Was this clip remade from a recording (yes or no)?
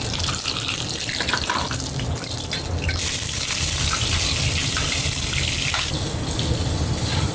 no